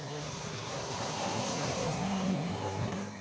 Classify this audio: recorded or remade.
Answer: remade